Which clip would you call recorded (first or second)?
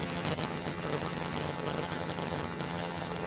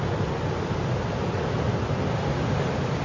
second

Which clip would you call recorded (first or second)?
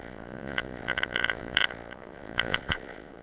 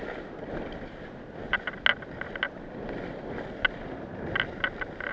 second